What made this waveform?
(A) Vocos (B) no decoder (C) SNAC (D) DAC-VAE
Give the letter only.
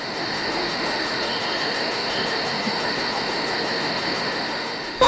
D